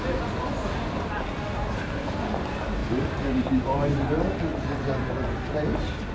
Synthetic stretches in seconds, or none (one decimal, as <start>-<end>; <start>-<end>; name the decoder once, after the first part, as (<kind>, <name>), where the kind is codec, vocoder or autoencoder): none

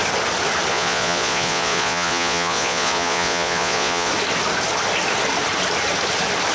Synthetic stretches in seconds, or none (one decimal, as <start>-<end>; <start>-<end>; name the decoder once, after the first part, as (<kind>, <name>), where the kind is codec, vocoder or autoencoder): 0.7-4.1 (vocoder, Vocos)

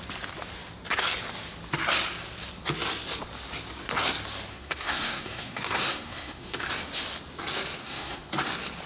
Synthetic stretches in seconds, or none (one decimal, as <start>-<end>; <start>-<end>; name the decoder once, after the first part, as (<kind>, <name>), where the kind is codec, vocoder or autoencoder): 4.5-6.7 (codec, SNAC); 7.8-8.3

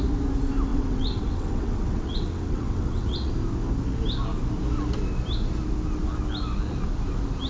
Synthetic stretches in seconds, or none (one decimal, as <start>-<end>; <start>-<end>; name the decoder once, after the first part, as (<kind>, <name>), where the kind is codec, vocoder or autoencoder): 0.7-3.3 (vocoder, WaveNeXt)

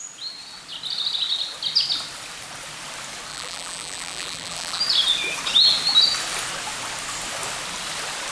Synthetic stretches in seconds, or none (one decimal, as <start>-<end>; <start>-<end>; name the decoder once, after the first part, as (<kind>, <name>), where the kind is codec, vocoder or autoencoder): 3.3-4.8 (vocoder, BigVGAN v2)

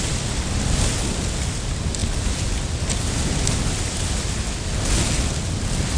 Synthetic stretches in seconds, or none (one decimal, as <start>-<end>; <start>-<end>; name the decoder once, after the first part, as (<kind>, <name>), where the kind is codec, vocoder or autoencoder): none